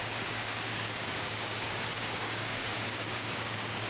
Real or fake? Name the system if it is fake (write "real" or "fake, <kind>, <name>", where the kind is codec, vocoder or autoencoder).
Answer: fake, codec, DAC